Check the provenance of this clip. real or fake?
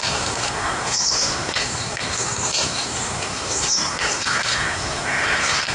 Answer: fake